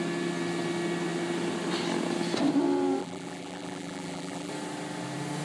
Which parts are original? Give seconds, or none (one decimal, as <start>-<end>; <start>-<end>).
0.0-3.0; 4.5-5.4